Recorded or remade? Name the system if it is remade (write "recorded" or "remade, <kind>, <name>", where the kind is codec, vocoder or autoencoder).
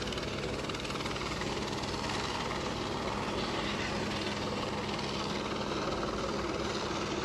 recorded